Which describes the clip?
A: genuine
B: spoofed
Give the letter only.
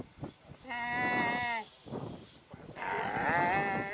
A